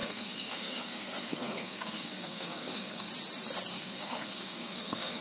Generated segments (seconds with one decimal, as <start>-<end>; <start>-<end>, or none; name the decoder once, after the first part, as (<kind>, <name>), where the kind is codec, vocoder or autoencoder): 0.0-3.1 (codec, SNAC); 3.7-5.2